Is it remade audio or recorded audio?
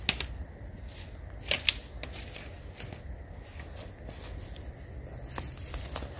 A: recorded